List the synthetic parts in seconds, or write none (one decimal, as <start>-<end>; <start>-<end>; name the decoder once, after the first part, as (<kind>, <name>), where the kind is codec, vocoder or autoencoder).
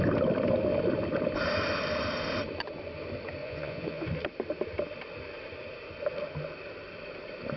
3.4-4.1 (vocoder, Vocos)